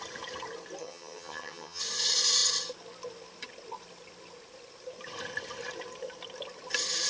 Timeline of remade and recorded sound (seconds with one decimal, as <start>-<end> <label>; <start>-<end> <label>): 0.0-0.8 recorded; 0.8-1.8 remade; 1.8-7.1 recorded